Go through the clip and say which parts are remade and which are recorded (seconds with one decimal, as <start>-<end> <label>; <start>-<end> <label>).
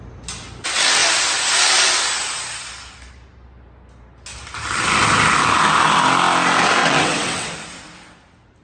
0.0-6.8 recorded; 6.8-7.5 remade; 7.5-8.6 recorded